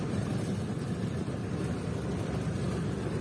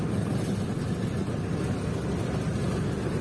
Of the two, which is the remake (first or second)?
first